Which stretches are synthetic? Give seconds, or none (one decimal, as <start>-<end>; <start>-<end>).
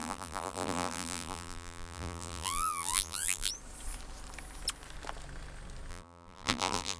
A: 0.0-3.5; 5.9-7.0